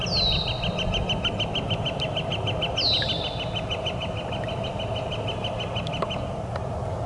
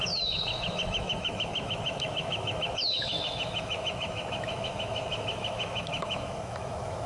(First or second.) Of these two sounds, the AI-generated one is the second